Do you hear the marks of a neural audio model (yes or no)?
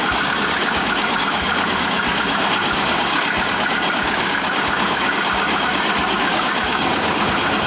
yes